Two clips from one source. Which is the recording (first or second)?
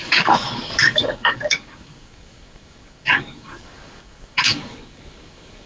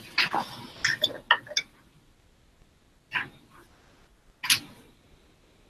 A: second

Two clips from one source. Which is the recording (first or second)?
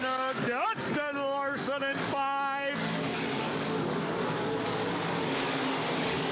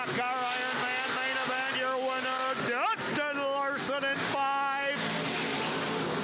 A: second